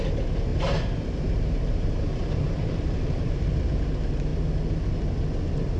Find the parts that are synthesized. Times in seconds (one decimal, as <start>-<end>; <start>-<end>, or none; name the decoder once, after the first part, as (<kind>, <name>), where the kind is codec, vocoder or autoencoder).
0.5-3.9 (vocoder, BigVGAN v2)